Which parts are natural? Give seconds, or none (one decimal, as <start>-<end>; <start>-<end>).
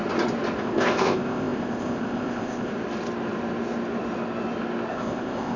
0.0-0.6; 2.7-4.9